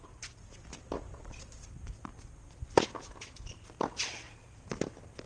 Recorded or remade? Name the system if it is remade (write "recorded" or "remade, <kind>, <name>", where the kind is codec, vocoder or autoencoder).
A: recorded